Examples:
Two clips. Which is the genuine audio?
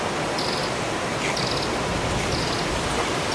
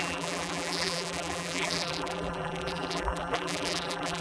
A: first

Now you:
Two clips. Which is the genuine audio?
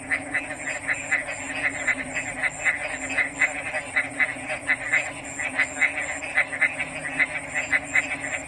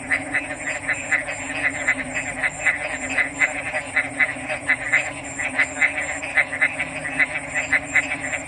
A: first